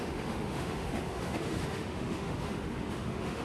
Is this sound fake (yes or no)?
yes